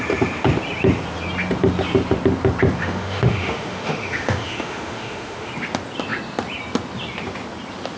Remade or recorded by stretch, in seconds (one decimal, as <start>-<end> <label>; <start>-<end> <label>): 0.0-2.8 recorded; 2.8-5.5 remade; 5.5-8.0 recorded